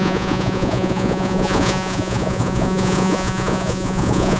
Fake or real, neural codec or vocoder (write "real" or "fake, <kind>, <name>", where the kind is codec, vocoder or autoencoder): fake, vocoder, Vocos